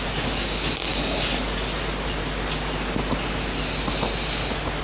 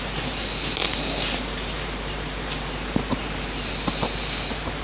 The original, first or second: first